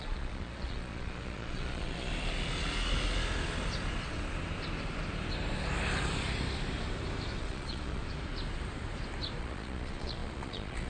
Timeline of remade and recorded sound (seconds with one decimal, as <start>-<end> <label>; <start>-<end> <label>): 0.0-2.1 remade; 2.1-7.4 recorded; 7.4-8.0 remade; 8.0-9.4 recorded; 9.4-10.9 remade